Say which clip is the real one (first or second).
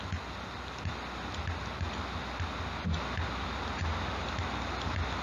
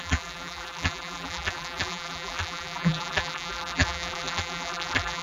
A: first